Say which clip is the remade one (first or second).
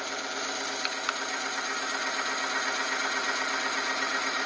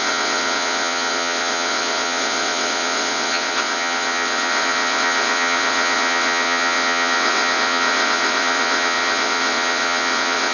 second